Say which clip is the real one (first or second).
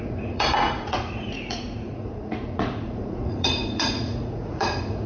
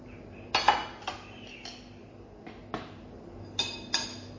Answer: second